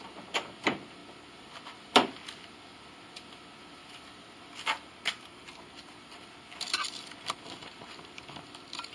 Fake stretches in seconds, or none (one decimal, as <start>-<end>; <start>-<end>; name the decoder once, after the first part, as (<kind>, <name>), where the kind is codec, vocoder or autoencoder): none